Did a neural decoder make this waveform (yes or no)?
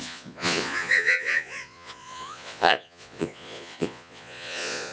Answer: yes